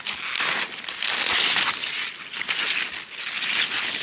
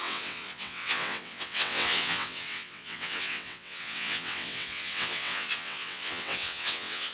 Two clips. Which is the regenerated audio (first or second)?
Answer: second